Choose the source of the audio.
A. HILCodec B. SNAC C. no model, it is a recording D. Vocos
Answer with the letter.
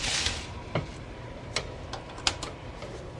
C